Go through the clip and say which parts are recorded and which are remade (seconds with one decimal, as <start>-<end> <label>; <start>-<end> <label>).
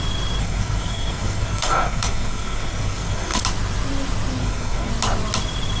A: 0.0-0.4 recorded; 0.4-3.4 remade; 3.4-4.4 recorded; 4.4-4.9 remade; 4.9-5.8 recorded